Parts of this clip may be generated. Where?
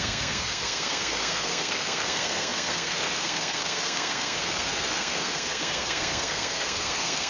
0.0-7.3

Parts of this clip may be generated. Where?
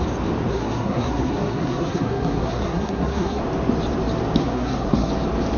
0.5-3.4; 4.4-5.1